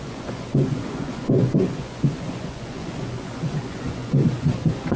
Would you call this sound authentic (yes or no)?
no